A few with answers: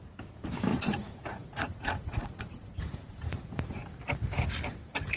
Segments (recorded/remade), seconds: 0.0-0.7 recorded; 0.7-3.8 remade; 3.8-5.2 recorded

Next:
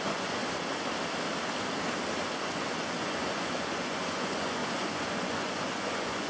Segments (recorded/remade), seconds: 0.0-0.4 remade; 0.4-2.4 recorded; 2.4-6.3 remade

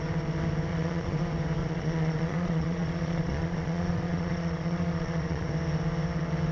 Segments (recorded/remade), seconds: 0.0-0.7 recorded; 0.7-1.2 remade; 1.2-1.6 recorded; 1.6-5.5 remade; 5.5-6.5 recorded

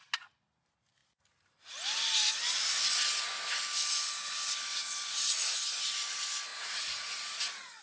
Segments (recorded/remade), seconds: 0.0-6.5 recorded; 6.5-7.8 remade

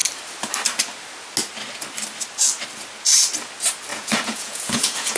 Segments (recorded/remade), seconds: 0.0-3.9 recorded; 3.9-5.2 remade

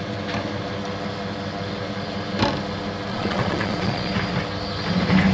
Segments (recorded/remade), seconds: 0.0-3.1 recorded; 3.1-4.1 remade; 4.1-5.3 recorded

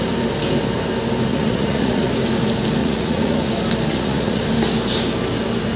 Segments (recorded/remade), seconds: 0.0-1.3 recorded; 1.3-2.1 remade; 2.1-2.8 recorded; 2.8-3.5 remade; 3.5-3.9 recorded; 3.9-4.4 remade; 4.4-5.8 recorded

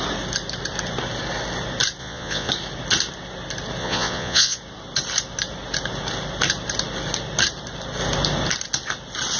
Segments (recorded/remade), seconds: 0.0-2.0 recorded; 2.0-2.5 remade; 2.5-3.8 recorded; 3.8-4.6 remade; 4.6-9.4 recorded